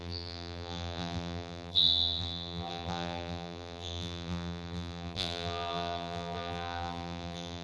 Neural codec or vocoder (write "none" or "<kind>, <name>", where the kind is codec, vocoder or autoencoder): vocoder, BigVGAN v2